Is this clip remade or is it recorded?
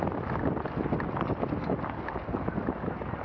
recorded